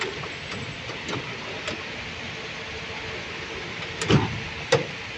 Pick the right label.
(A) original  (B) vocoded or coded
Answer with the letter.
A